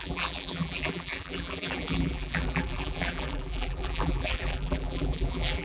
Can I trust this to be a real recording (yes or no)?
no